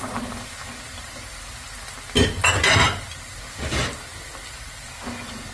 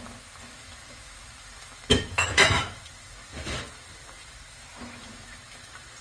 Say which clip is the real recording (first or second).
first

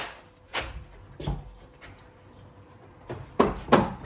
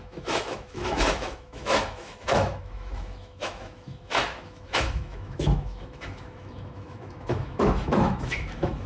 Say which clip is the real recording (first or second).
first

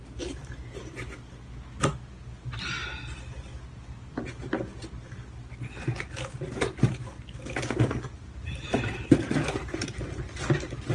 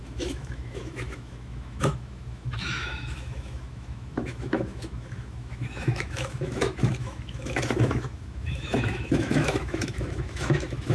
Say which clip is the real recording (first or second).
first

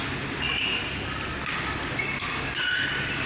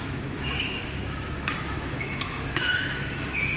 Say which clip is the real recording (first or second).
first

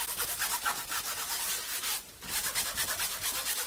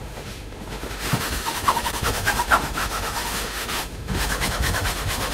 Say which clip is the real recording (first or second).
first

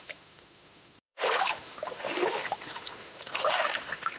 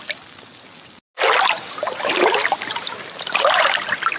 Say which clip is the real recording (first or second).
second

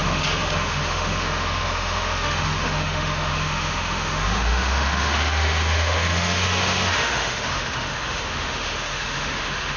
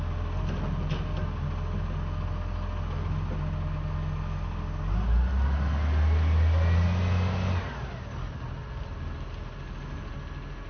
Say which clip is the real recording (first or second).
second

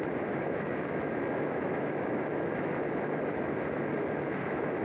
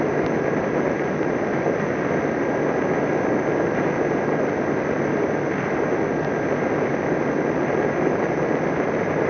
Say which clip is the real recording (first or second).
second